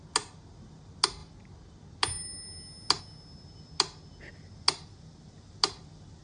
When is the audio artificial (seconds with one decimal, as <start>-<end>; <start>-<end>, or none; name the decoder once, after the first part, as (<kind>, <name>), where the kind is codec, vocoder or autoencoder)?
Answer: none

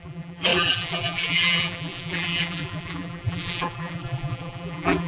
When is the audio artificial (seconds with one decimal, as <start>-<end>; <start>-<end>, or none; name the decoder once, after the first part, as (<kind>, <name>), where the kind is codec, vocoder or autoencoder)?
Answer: 0.0-5.1 (vocoder, BigVGAN v2)